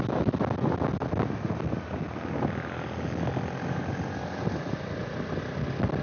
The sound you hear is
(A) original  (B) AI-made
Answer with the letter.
A